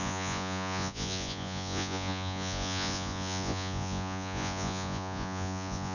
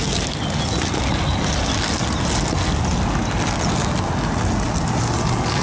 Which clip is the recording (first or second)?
second